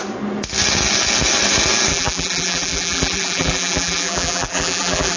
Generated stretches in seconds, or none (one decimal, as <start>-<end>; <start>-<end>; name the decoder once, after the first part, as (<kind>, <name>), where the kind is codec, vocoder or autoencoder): 1.9-5.2 (vocoder, BigVGAN v2)